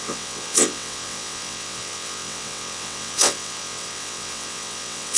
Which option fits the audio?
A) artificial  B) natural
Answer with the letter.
A